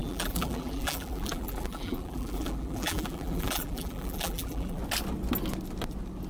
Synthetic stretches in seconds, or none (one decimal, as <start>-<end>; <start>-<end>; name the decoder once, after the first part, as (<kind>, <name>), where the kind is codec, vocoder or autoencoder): 0.0-4.8 (vocoder, BigVGAN v2)